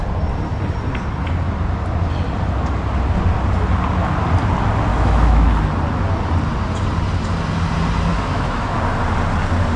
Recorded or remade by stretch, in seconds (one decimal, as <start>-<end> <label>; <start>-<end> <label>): 0.0-4.9 recorded; 4.9-5.5 remade; 5.5-8.1 recorded; 8.1-8.8 remade; 8.8-9.8 recorded